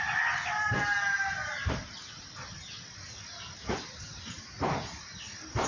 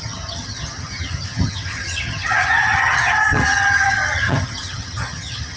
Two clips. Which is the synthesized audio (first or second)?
second